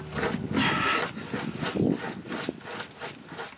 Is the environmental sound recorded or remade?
recorded